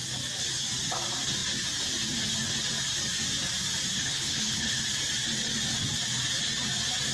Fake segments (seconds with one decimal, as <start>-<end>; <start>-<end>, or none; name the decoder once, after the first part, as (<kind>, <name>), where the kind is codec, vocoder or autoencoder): 3.9-4.8 (codec, HILCodec)